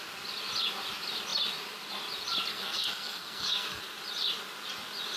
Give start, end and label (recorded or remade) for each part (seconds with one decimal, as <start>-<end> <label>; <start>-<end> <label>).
0.0-2.5 recorded; 2.5-3.8 remade; 3.8-5.2 recorded